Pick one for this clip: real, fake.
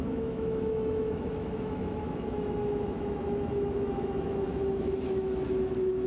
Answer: fake